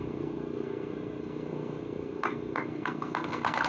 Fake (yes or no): yes